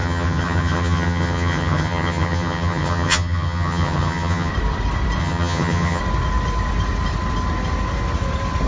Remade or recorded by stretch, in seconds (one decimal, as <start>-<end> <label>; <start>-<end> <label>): 0.0-4.5 remade; 4.5-5.2 recorded; 5.2-6.0 remade; 6.0-8.7 recorded